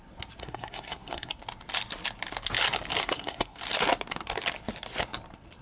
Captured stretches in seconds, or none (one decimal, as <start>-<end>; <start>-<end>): 0.0-0.4; 1.3-3.0; 3.6-5.6